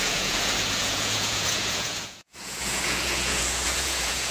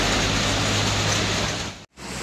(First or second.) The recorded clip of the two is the second